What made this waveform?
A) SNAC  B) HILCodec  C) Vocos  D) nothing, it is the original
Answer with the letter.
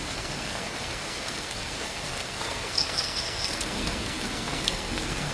A